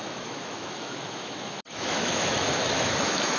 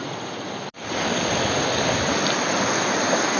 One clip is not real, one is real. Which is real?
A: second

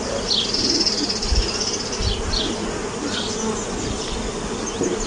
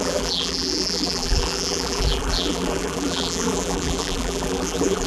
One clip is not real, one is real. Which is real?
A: first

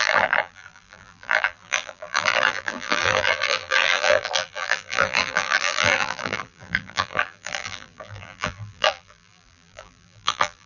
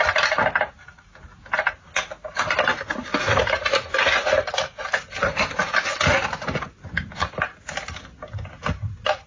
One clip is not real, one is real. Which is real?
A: second